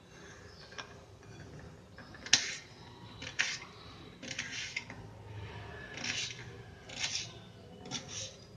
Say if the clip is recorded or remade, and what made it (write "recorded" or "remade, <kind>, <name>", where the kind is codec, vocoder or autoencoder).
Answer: recorded